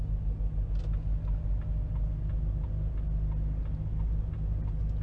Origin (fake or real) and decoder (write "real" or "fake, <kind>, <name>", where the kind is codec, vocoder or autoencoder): real